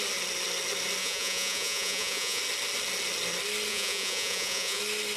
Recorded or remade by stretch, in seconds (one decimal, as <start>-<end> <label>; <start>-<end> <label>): 0.0-1.0 recorded; 1.0-2.4 remade; 2.4-3.7 recorded; 3.7-4.8 remade; 4.8-5.2 recorded